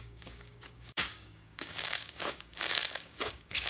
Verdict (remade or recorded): remade